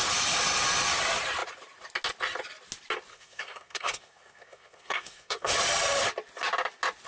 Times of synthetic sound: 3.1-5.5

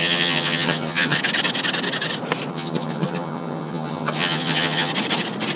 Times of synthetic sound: 0.0-1.2; 2.5-4.9

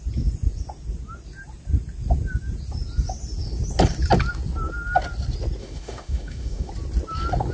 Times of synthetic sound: 5.6-6.7